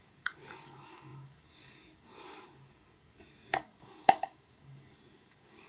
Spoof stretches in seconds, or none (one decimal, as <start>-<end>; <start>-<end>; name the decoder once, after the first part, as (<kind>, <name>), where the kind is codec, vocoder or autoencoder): 0.0-5.7 (codec, DAC)